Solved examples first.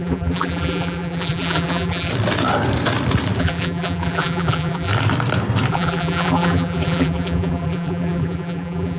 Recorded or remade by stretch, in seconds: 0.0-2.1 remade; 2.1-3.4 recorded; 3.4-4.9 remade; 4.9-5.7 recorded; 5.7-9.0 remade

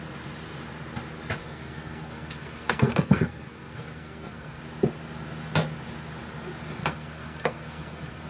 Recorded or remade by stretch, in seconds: 0.0-1.4 recorded; 1.4-4.6 remade; 4.6-6.8 recorded; 6.8-8.3 remade

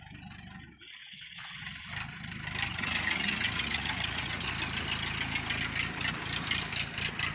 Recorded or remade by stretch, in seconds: 0.0-1.0 recorded; 1.0-1.6 remade; 1.6-2.7 recorded; 2.7-4.5 remade; 4.5-7.3 recorded

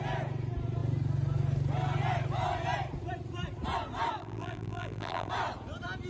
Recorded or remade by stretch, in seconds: 0.0-4.2 recorded; 4.2-5.3 remade; 5.3-6.1 recorded

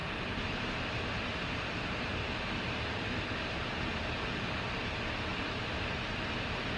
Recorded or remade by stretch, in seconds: 0.0-3.9 remade; 3.9-6.8 recorded